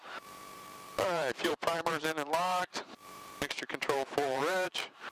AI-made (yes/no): yes